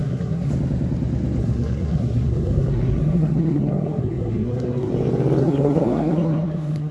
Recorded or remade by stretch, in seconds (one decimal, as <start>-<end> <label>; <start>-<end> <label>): 0.0-0.5 remade; 0.5-1.4 recorded; 1.4-4.9 remade; 4.9-5.4 recorded; 5.4-6.9 remade